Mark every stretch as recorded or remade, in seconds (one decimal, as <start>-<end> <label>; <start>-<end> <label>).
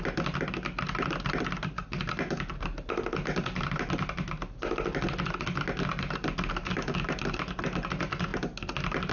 0.0-9.1 recorded